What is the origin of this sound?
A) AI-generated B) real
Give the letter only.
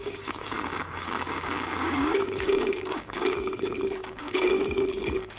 A